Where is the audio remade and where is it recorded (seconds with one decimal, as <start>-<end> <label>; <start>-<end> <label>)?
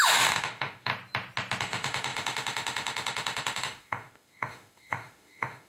0.0-0.9 remade; 0.9-1.6 recorded; 1.6-5.7 remade